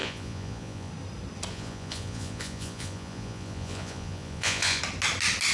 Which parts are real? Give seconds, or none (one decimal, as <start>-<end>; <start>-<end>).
0.9-1.5; 4.8-5.5